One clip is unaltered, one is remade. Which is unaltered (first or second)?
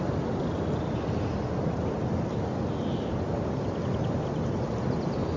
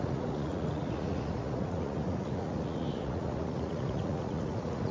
first